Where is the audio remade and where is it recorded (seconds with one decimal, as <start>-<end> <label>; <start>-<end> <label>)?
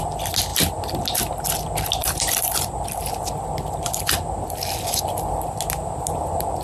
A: 0.0-2.0 recorded; 2.0-3.1 remade; 3.1-6.6 recorded